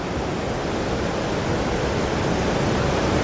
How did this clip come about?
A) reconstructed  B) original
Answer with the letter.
B